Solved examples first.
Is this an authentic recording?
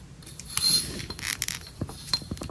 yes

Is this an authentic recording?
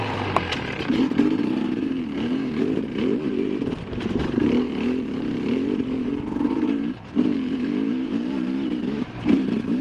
no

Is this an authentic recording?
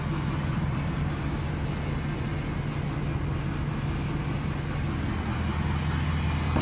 yes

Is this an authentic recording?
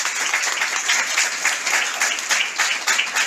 yes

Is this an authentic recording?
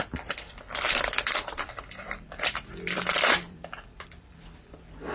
no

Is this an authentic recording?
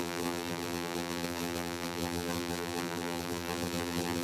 no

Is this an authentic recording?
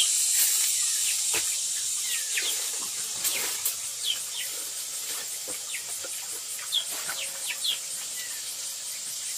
yes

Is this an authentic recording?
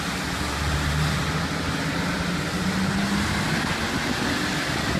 yes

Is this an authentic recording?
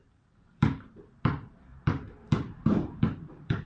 no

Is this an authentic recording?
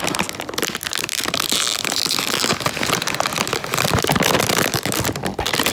yes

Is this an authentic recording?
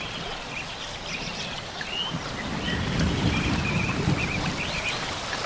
yes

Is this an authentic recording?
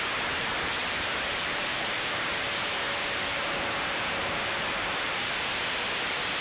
no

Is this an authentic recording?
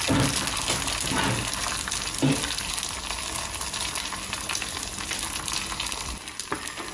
yes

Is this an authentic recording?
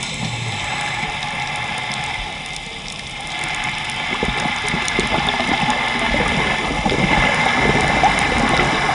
yes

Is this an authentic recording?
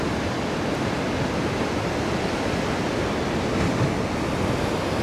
yes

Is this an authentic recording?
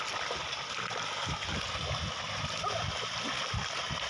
yes